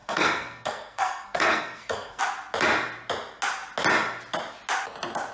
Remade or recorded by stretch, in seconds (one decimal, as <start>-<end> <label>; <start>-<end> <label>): 0.0-2.2 remade; 2.2-5.3 recorded